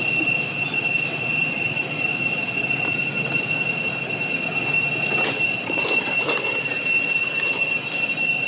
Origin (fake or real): real